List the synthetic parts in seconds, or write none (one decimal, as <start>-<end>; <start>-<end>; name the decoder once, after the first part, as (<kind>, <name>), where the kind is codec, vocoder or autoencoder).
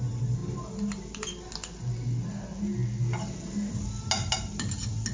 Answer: none